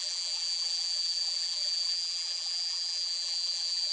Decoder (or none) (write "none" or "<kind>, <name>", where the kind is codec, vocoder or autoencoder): vocoder, BigVGAN v2